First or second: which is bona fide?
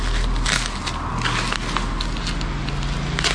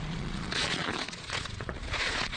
first